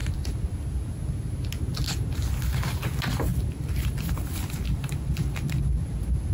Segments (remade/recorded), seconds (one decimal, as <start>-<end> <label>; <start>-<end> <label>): 0.0-0.5 remade; 0.5-3.3 recorded; 3.3-5.6 remade; 5.6-6.3 recorded